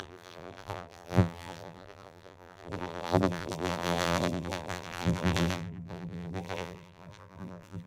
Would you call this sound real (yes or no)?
no